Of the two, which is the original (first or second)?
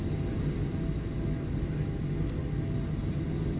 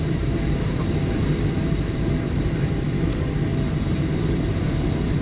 first